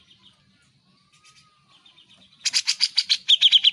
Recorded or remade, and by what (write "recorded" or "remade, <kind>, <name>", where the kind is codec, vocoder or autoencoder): recorded